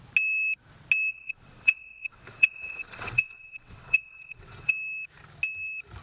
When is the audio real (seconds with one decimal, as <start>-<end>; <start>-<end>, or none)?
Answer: 0.0-1.1; 4.7-6.0